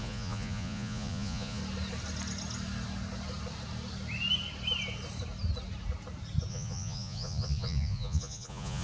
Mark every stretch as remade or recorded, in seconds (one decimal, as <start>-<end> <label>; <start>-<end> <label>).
0.0-1.6 remade; 1.6-6.5 recorded; 6.5-8.8 remade